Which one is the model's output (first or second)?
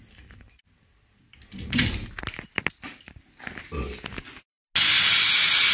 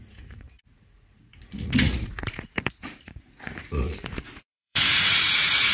second